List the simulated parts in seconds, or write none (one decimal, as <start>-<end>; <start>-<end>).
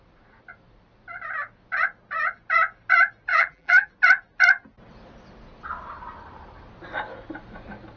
3.3-3.9